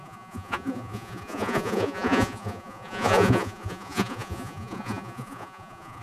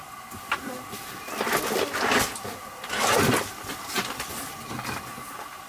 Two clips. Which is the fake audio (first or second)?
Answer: first